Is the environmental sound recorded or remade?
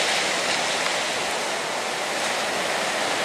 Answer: recorded